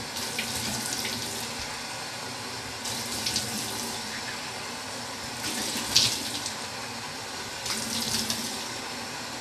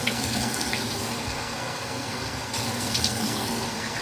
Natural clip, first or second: first